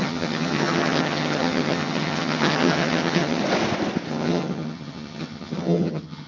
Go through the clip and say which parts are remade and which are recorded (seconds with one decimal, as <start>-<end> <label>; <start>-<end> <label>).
0.0-3.4 remade; 3.4-4.1 recorded; 4.1-6.3 remade

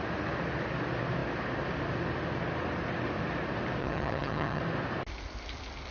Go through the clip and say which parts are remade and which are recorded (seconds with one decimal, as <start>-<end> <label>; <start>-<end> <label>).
0.0-3.8 recorded; 3.8-4.6 remade; 4.6-5.9 recorded

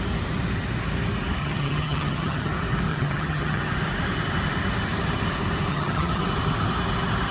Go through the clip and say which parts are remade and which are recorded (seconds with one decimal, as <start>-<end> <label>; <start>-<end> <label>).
0.0-1.4 recorded; 1.4-2.5 remade; 2.5-2.9 recorded; 2.9-3.6 remade; 3.6-5.7 recorded; 5.7-6.2 remade; 6.2-7.3 recorded

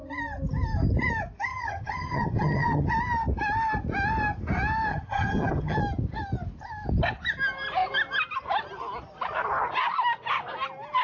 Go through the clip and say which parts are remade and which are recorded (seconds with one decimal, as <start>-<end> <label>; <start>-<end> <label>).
0.0-1.5 recorded; 1.5-2.9 remade; 2.9-4.9 recorded; 4.9-5.8 remade; 5.8-11.0 recorded

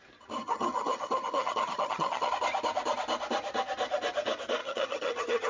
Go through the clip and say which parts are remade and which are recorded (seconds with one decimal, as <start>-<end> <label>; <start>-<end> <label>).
0.0-0.4 recorded; 0.4-2.3 remade; 2.3-4.6 recorded; 4.6-5.5 remade

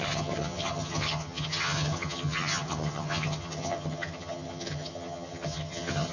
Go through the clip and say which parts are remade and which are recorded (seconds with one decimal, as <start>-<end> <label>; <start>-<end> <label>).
0.0-6.1 remade